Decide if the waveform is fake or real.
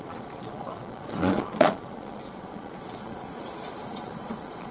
fake